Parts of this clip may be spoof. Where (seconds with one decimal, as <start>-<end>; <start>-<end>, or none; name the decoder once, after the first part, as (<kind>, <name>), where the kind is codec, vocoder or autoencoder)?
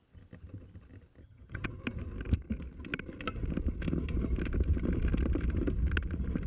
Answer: 1.2-1.8 (vocoder, HiFi-GAN)